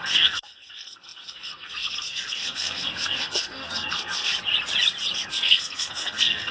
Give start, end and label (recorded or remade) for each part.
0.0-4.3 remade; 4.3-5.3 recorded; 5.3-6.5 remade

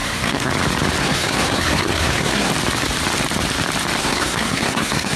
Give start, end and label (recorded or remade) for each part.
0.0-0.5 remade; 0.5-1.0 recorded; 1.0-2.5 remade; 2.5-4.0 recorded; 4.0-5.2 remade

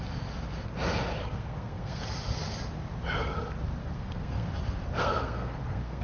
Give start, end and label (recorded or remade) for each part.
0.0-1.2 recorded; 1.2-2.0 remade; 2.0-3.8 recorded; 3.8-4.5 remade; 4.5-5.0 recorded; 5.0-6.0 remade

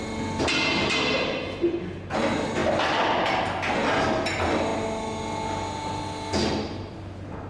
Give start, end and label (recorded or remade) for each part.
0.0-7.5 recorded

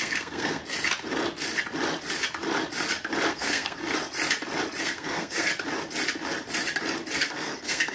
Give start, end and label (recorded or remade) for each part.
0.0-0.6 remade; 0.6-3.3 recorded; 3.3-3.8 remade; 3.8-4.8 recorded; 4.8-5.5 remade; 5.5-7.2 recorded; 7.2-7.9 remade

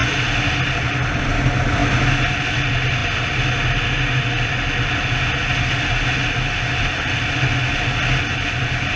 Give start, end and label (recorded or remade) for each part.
0.0-9.0 recorded